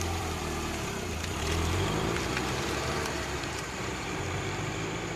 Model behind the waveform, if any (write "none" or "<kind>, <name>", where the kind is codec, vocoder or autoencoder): vocoder, BigVGAN v2